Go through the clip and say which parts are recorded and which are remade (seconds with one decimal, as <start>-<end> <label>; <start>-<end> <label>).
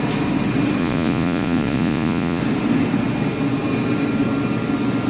0.0-0.8 recorded; 0.8-2.4 remade; 2.4-5.1 recorded